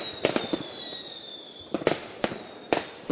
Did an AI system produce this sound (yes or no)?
no